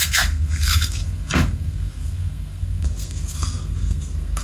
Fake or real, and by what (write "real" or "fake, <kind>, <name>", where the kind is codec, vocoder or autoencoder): fake, codec, SNAC